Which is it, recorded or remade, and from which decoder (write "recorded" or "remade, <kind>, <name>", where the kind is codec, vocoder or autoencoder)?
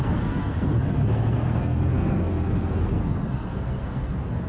remade, codec, SNAC